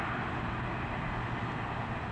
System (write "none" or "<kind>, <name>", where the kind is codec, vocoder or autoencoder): none